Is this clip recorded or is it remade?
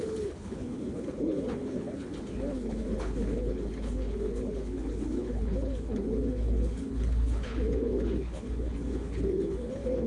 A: remade